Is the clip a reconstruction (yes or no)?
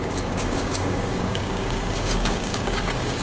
yes